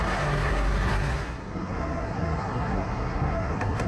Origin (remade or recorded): remade